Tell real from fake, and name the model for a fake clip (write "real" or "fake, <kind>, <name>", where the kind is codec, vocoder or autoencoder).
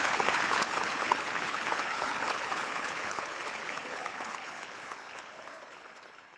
fake, codec, HILCodec